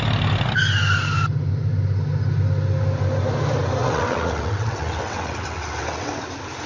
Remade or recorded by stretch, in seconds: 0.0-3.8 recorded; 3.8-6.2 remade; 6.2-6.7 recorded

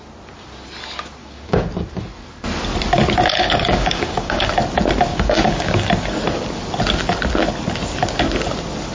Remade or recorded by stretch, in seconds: 0.0-1.2 recorded; 1.2-1.7 remade; 1.7-3.3 recorded; 3.3-4.5 remade; 4.5-5.1 recorded; 5.1-5.9 remade; 5.9-8.9 recorded

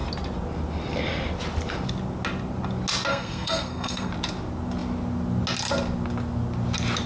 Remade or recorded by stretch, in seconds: 0.0-3.1 recorded; 3.1-4.1 remade; 4.1-7.1 recorded

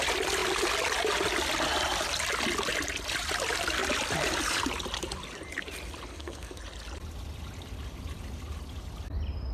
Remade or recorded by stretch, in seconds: 0.0-6.1 recorded; 6.1-6.6 remade; 6.6-9.5 recorded

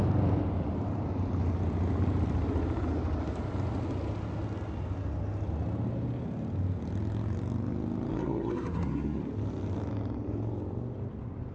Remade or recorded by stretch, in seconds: 0.0-8.1 recorded; 8.1-9.2 remade; 9.2-11.5 recorded